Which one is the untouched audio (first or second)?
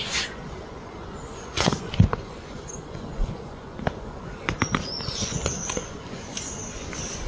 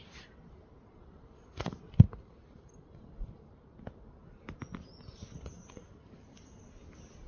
second